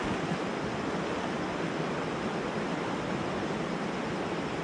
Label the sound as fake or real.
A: real